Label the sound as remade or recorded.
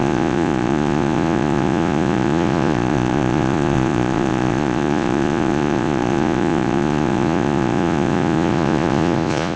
remade